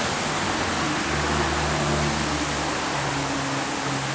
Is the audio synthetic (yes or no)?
no